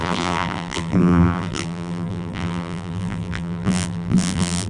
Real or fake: fake